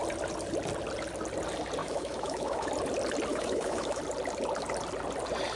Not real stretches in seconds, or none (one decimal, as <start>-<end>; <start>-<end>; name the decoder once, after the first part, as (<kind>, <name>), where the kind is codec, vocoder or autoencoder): 1.8-2.7 (autoencoder, DAC-VAE); 3.3-4.0